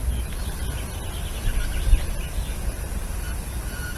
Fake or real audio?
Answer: real